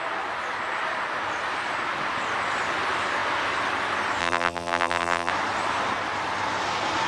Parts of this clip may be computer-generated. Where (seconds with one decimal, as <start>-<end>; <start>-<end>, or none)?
4.2-5.3